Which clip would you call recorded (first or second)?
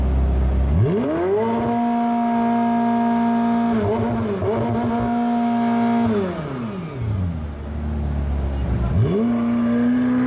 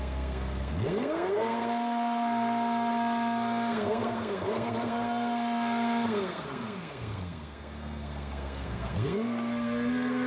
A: first